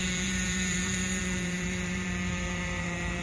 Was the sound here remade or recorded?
remade